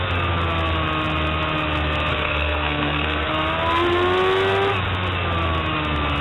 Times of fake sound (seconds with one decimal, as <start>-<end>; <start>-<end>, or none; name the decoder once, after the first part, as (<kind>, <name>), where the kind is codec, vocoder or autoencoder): 2.1-3.3 (codec, SNAC)